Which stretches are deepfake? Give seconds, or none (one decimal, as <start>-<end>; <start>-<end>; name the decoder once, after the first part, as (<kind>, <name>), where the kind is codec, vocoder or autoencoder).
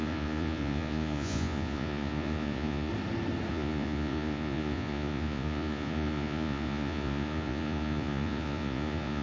0.0-2.9 (vocoder, Vocos); 3.5-9.2